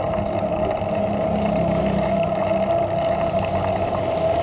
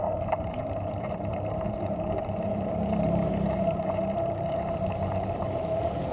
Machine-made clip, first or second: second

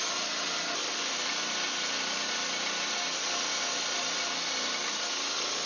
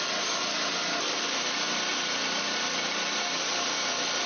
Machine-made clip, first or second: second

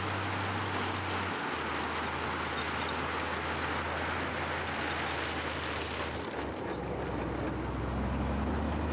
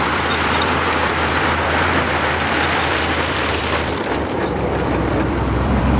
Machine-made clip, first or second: second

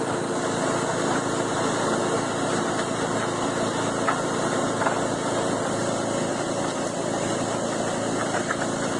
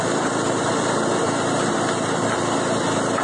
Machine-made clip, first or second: second